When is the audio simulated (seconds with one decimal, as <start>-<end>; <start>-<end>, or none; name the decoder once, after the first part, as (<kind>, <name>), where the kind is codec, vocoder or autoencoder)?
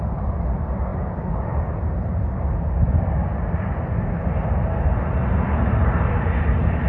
none